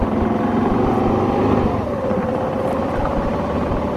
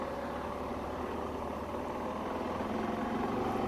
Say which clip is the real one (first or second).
second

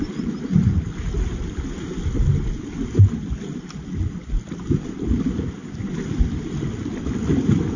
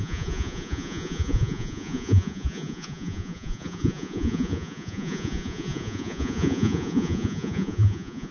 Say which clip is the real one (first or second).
first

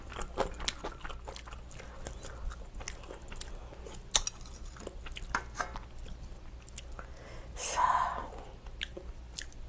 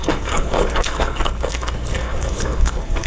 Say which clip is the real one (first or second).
first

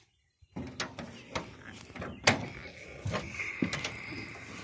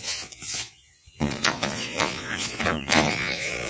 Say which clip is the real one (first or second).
first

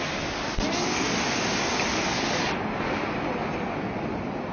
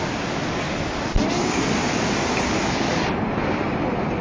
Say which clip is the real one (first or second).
first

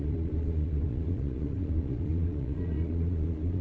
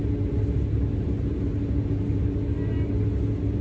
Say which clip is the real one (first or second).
second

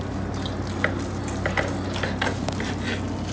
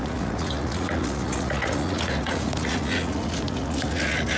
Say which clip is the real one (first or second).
first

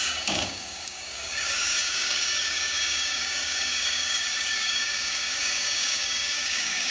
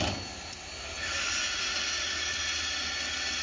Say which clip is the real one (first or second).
second